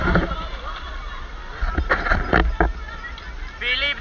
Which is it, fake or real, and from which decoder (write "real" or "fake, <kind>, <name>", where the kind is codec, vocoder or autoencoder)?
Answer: real